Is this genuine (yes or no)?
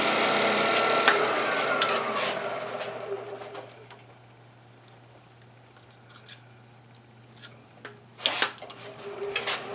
yes